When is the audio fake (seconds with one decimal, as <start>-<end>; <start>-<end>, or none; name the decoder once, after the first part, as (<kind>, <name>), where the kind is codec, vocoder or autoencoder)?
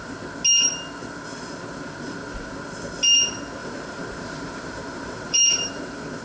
3.6-5.8 (vocoder, BigVGAN v2)